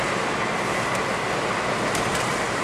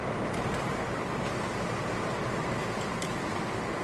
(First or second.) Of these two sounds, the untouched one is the first